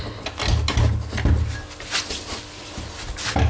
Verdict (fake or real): real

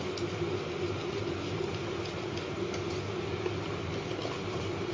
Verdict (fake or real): real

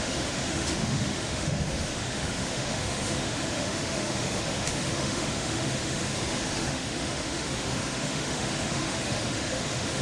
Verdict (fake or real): fake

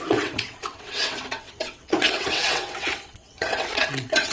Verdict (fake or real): fake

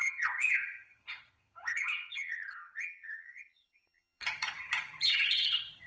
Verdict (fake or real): fake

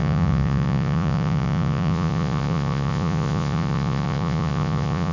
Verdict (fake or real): fake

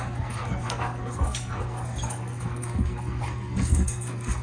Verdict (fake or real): fake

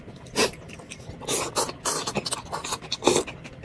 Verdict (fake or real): real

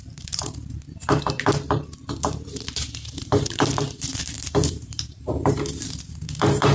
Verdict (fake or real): fake